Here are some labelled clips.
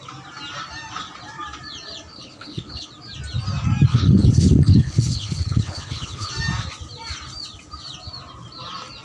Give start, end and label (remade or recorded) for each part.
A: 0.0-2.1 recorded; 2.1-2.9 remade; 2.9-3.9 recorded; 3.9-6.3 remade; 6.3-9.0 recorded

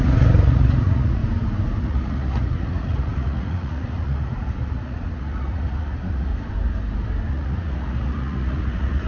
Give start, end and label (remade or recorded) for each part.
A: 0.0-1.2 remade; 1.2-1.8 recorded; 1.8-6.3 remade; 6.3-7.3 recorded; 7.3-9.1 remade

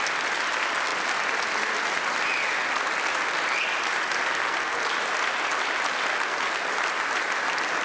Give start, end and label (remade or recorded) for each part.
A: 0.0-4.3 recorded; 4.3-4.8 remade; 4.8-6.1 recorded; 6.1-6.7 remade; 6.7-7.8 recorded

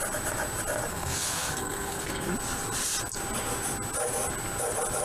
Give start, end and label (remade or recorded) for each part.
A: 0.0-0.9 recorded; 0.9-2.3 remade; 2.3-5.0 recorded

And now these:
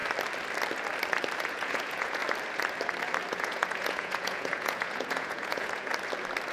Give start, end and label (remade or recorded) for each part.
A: 0.0-1.4 recorded; 1.4-2.2 remade; 2.2-3.3 recorded; 3.3-5.9 remade; 5.9-6.5 recorded

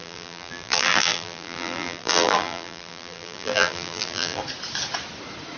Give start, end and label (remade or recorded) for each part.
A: 0.0-4.4 remade; 4.4-5.6 recorded